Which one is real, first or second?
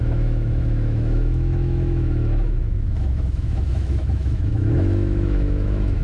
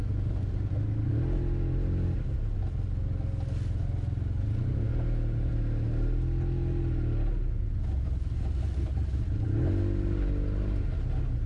second